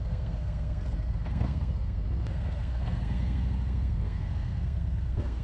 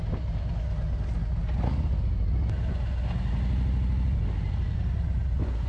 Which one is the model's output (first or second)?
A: first